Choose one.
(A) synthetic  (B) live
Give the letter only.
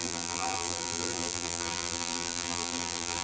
A